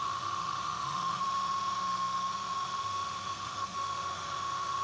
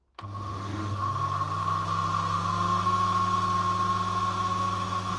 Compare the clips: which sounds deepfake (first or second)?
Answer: first